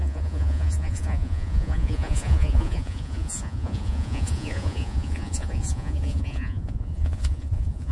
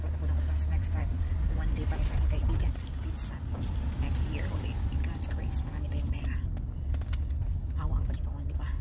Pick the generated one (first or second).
first